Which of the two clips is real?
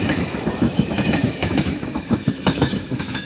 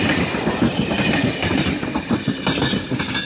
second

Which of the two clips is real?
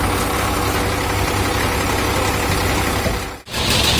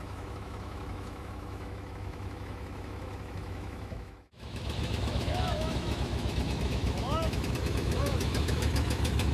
first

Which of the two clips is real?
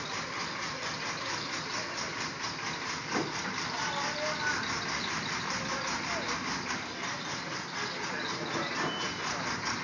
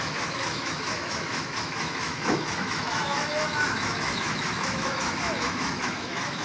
first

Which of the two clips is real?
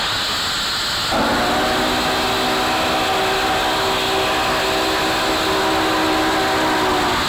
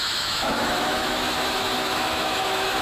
first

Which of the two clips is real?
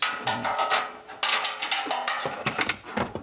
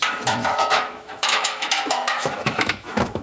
first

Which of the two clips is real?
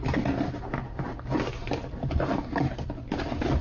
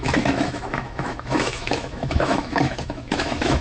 first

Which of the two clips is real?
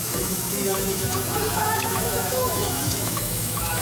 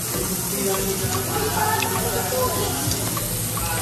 second